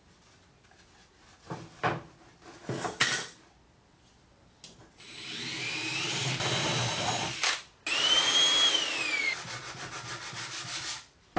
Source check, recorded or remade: recorded